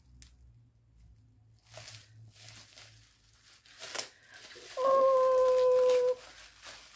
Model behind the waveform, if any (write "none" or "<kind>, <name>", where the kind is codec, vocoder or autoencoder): none